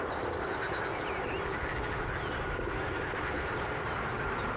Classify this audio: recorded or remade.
recorded